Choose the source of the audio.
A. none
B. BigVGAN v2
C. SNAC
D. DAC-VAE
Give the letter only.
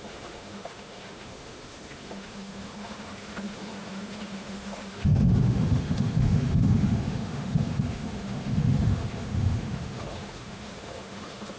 D